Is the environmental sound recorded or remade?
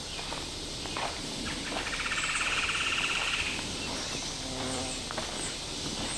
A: remade